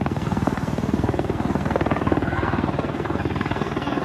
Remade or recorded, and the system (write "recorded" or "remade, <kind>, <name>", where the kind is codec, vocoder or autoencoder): remade, codec, SNAC